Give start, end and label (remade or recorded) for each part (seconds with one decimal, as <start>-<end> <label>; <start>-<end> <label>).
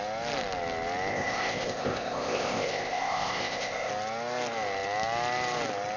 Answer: 0.0-1.1 recorded; 1.1-3.9 remade; 3.9-6.0 recorded